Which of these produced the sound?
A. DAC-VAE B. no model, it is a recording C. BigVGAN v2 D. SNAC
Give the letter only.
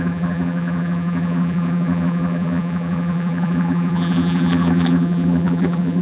C